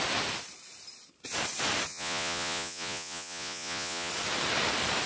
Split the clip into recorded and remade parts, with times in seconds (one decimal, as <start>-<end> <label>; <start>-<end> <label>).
0.0-1.9 recorded; 1.9-4.1 remade; 4.1-5.1 recorded